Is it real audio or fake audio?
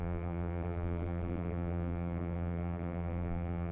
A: fake